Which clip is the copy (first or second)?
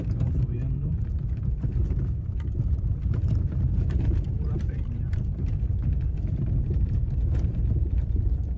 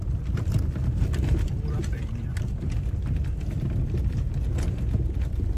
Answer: first